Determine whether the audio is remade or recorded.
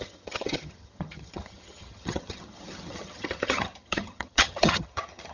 remade